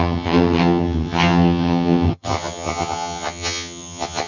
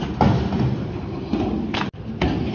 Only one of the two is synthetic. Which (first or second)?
first